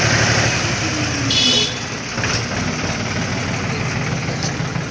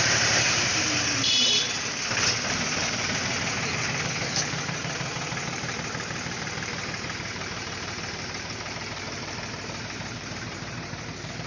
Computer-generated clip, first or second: second